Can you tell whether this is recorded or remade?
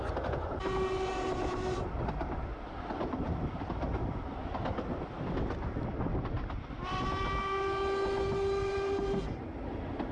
recorded